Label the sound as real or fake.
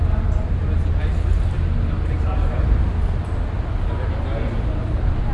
real